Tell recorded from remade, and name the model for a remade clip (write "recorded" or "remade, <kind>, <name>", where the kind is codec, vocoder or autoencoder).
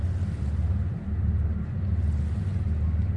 recorded